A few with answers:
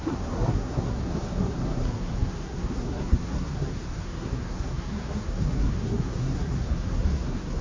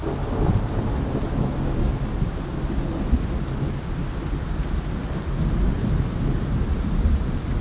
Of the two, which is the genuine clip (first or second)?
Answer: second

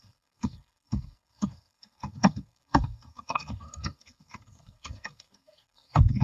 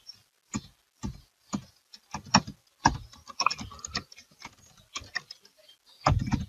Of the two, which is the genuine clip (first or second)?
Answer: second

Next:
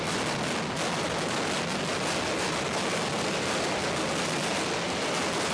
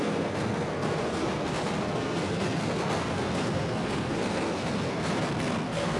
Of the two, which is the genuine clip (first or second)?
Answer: first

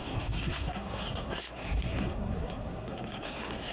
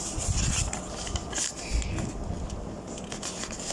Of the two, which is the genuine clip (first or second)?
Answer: second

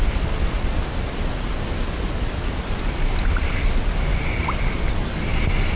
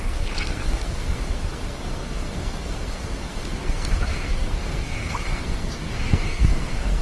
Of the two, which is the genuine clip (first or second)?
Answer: first